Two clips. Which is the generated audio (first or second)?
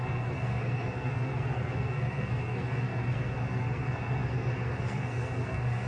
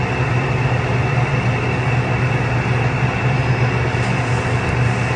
first